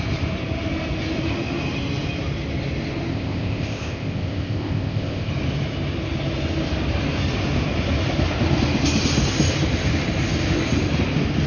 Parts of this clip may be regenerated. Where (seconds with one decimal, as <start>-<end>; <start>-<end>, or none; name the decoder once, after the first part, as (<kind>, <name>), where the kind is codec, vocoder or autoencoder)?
3.1-5.3 (codec, ZipCodec)